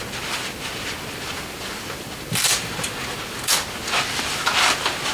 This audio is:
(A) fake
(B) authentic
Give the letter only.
B